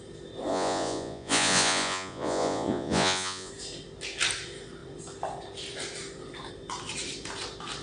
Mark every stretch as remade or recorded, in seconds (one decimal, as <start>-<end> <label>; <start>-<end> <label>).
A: 0.0-0.5 recorded; 0.5-3.5 remade; 3.5-7.8 recorded